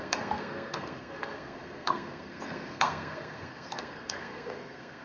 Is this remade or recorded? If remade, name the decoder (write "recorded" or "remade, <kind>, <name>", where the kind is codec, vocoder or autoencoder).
remade, codec, SNAC